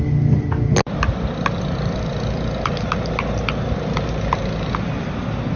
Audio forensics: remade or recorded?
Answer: recorded